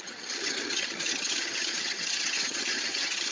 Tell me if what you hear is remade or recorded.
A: remade